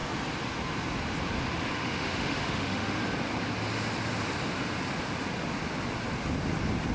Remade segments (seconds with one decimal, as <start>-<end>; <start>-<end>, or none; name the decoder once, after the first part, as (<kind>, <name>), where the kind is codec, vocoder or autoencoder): 1.8-3.0 (autoencoder, DAC-VAE)